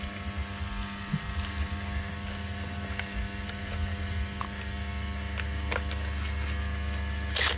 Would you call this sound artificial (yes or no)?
no